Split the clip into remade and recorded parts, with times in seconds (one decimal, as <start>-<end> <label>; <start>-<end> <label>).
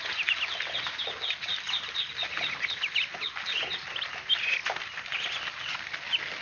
0.0-6.4 recorded